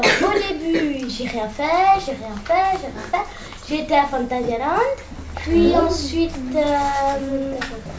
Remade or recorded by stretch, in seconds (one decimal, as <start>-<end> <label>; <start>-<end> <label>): 0.0-8.0 recorded